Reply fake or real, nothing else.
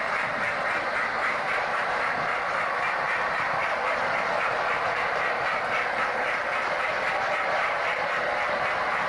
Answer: fake